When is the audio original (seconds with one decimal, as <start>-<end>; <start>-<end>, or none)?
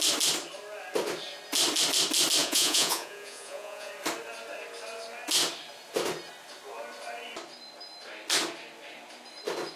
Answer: 0.0-2.4; 3.9-9.8